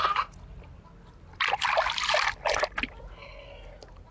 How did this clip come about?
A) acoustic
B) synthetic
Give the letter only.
A